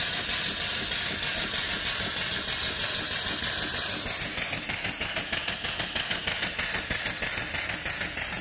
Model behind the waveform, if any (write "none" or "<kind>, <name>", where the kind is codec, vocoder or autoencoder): none